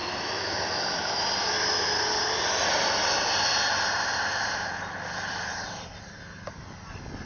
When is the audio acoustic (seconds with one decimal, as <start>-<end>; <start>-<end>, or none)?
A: 1.2-7.3